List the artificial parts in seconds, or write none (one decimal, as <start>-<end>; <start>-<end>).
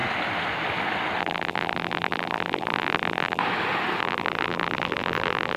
1.2-3.4; 4.0-5.6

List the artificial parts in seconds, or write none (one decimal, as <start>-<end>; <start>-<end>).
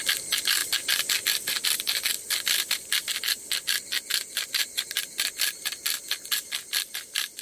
none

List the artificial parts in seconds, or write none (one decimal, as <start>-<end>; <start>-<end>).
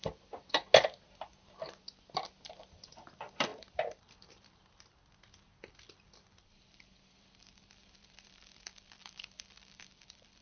0.0-0.7; 2.6-10.4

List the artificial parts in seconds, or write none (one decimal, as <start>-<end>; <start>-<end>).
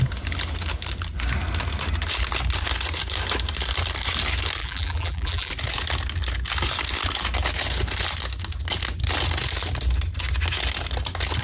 4.6-5.5